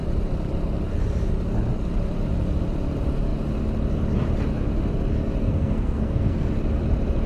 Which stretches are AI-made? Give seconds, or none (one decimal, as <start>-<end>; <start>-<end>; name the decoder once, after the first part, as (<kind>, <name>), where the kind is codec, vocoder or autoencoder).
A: 5.4-6.5 (codec, SNAC)